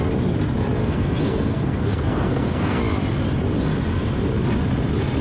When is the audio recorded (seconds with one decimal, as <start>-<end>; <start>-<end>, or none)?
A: 0.0-0.8; 2.8-5.2